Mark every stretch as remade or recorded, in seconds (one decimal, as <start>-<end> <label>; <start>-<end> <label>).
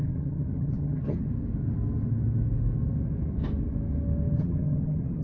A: 0.0-1.3 remade; 1.3-4.4 recorded; 4.4-5.2 remade